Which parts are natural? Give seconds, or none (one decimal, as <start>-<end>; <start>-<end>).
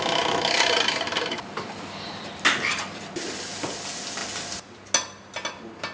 0.0-5.9